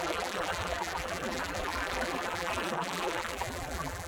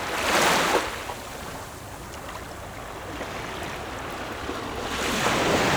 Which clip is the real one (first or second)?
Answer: second